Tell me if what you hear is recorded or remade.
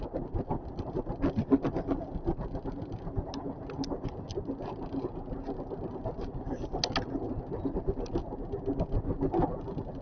recorded